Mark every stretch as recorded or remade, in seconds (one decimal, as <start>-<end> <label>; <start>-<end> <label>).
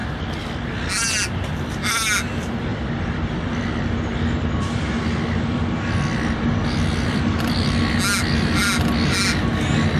0.0-2.7 recorded; 2.7-7.8 remade; 7.8-10.0 recorded